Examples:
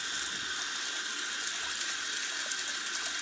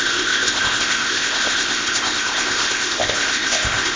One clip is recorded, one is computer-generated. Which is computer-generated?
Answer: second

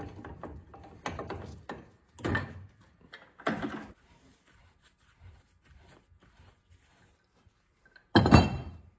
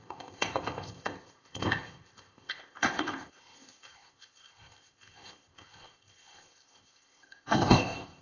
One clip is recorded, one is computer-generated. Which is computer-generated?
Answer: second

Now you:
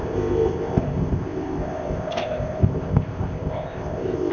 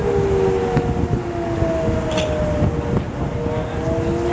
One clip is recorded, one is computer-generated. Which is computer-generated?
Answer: first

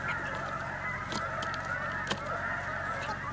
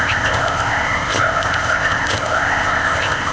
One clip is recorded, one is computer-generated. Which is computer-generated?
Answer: second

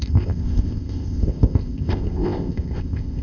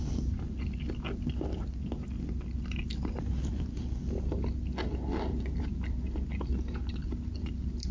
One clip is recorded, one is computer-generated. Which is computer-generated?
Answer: first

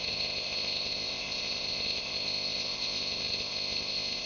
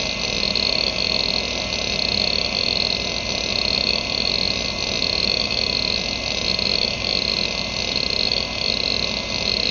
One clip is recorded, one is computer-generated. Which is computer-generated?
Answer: first